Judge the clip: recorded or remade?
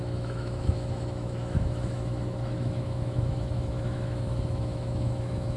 remade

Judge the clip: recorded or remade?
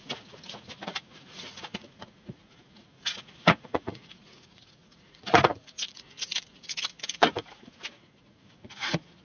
remade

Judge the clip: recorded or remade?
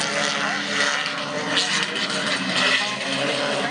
recorded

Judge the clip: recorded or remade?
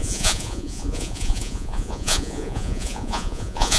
remade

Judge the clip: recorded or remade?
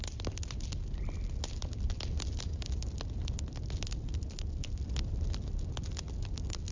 recorded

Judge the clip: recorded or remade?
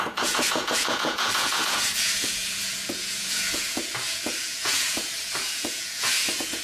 remade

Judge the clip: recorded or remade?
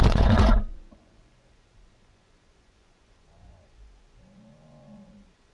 remade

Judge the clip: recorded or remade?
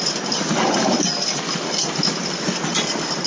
recorded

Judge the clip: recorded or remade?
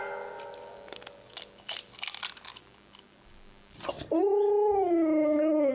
recorded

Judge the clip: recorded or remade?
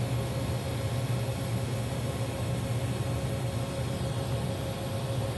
recorded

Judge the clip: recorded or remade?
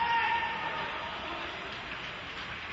recorded